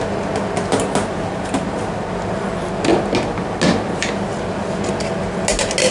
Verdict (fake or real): real